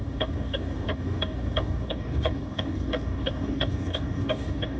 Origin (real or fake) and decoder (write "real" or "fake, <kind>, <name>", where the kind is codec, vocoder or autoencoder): fake, codec, DAC